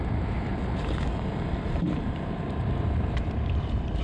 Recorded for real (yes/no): no